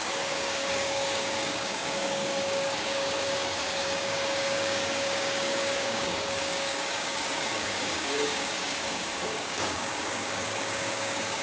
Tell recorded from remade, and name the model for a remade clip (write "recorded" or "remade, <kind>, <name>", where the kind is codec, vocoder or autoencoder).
remade, codec, DAC